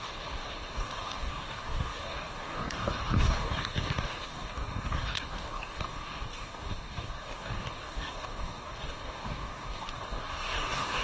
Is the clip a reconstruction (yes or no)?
yes